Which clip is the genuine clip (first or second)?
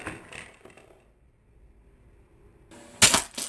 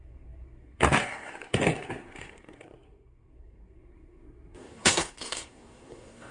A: first